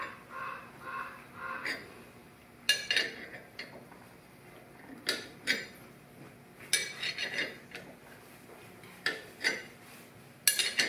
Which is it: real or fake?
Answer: real